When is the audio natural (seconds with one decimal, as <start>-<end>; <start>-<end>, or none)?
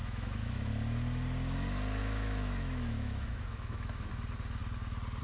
0.7-2.0; 4.1-5.2